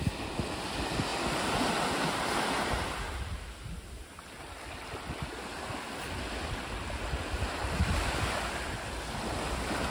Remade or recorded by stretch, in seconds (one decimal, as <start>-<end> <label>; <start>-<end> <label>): 0.0-9.9 recorded